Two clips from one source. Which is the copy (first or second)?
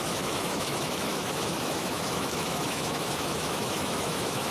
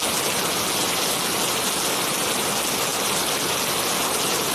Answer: first